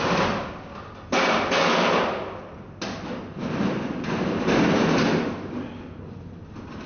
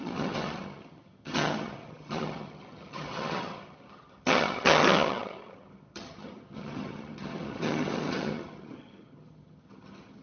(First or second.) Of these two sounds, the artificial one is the second